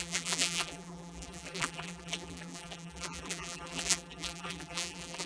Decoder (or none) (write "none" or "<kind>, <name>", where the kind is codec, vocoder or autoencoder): vocoder, BigVGAN v2